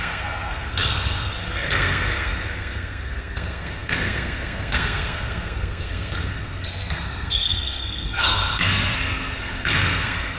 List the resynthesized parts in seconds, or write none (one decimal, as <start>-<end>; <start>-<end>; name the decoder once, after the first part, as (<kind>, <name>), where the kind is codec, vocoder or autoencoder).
0.0-10.4 (codec, SNAC)